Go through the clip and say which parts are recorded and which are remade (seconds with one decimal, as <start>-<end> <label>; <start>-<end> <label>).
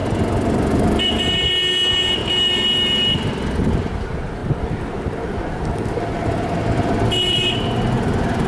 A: 0.0-1.5 remade; 1.5-2.2 recorded; 2.2-3.3 remade; 3.3-4.4 recorded; 4.4-4.9 remade; 4.9-8.5 recorded